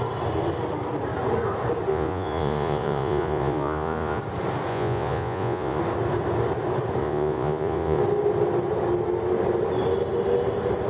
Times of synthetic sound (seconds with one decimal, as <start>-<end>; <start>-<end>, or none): 1.9-4.2; 4.7-5.8; 7.0-8.0